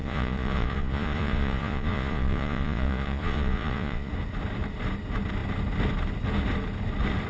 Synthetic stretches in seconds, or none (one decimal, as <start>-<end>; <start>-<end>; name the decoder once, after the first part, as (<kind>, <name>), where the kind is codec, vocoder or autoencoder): 0.0-4.1 (vocoder, Vocos)